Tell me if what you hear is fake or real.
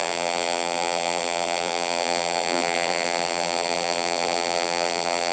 fake